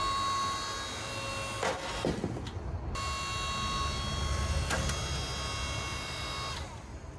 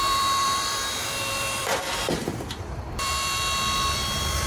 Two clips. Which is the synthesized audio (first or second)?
second